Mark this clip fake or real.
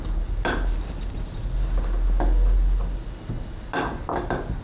real